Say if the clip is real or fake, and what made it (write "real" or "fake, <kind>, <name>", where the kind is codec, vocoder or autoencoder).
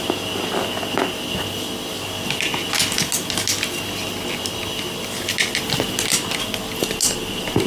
real